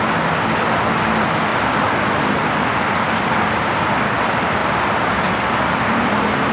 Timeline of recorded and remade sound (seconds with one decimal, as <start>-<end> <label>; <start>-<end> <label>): 0.0-1.5 recorded; 1.5-2.2 remade; 2.2-6.5 recorded